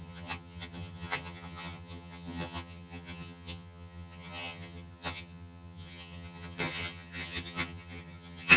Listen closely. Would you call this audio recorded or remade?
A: remade